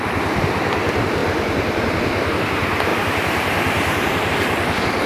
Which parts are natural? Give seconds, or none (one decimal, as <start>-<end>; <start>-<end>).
0.0-2.9; 4.3-5.1